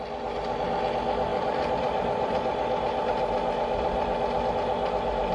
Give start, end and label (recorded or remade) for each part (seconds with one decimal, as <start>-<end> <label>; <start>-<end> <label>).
0.0-5.3 recorded